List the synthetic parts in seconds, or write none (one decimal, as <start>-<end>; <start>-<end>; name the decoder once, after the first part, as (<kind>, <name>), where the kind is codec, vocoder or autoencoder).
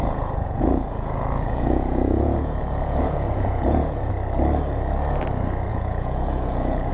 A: 0.0-4.1 (vocoder, Vocos); 5.7-6.9